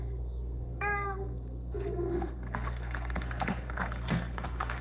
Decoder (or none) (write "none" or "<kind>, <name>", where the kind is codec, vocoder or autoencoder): codec, SNAC